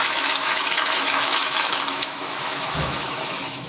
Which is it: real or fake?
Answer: fake